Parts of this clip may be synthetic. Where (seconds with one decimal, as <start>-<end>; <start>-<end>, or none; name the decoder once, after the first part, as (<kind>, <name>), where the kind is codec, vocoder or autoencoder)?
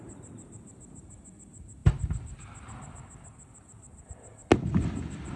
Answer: none